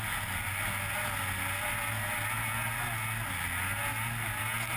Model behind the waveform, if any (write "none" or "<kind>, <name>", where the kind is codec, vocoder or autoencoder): none